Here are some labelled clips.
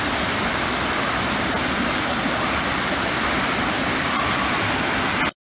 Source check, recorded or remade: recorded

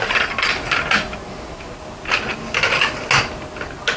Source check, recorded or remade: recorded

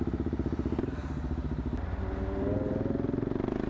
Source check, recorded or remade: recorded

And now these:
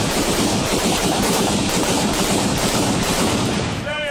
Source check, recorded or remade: remade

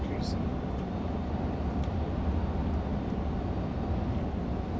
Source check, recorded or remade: recorded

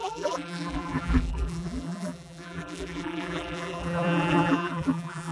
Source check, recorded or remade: remade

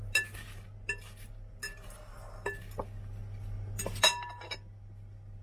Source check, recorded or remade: recorded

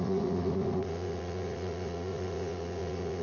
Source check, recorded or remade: remade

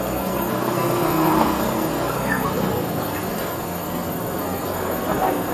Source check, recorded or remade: remade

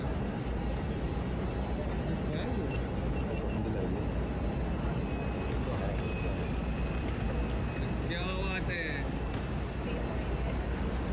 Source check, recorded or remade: recorded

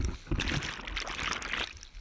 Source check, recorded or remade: recorded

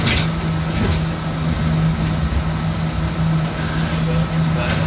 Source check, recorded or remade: recorded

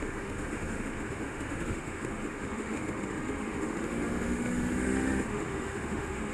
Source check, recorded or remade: remade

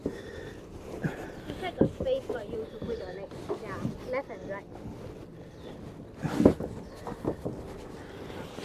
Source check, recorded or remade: recorded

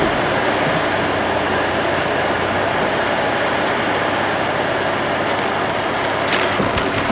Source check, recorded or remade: recorded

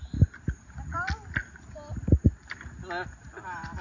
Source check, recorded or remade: recorded